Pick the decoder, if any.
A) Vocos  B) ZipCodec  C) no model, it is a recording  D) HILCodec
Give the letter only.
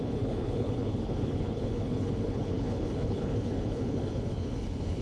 D